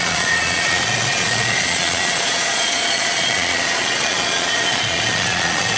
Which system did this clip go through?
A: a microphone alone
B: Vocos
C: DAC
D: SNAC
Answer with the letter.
B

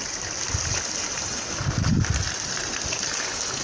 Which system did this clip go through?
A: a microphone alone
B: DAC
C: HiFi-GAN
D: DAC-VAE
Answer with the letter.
A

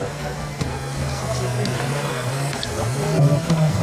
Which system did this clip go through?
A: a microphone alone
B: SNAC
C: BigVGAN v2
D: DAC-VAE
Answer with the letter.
B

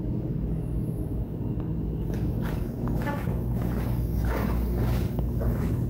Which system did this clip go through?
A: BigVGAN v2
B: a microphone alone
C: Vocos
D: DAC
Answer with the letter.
D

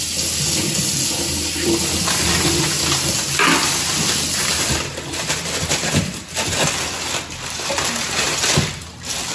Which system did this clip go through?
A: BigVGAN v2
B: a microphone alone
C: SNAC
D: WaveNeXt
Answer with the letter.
B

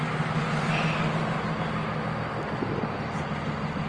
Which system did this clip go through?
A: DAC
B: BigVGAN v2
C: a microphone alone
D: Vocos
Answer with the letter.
C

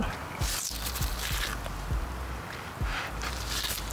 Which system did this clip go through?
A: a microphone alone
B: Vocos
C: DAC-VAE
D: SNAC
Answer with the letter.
A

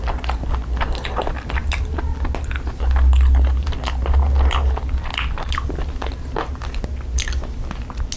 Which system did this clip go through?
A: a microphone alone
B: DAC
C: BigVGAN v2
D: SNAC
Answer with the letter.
A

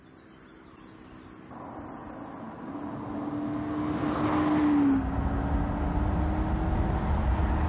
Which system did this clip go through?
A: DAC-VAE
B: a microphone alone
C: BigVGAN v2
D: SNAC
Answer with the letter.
B